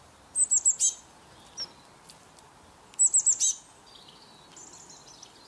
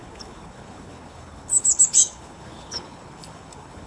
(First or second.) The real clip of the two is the first